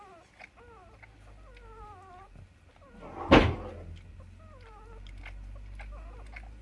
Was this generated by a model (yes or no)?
no